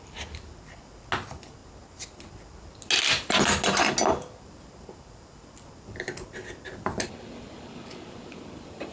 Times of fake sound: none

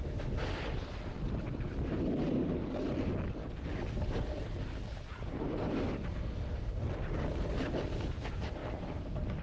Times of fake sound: 6.1-6.8 (codec, SNAC)

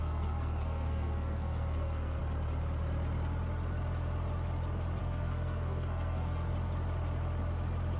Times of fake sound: 0.0-2.2 (codec, SNAC); 5.0-6.5

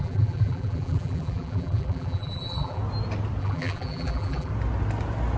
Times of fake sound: 0.0-2.8 (vocoder, BigVGAN v2); 3.4-4.5

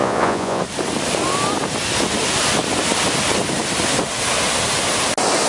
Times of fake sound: 0.0-0.6 (vocoder, Vocos)

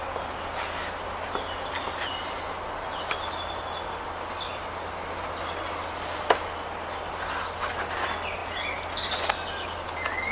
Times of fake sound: none

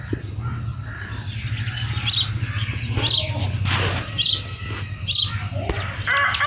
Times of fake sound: none

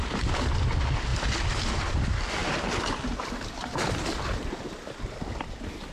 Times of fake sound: none